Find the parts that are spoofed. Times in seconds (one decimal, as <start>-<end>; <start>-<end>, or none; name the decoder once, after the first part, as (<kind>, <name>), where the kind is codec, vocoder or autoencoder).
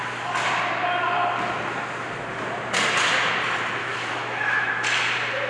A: 3.8-4.7 (autoencoder, DAC-VAE)